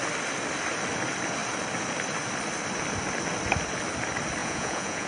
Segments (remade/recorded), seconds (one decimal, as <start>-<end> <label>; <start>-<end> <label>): 0.0-4.4 recorded; 4.4-5.1 remade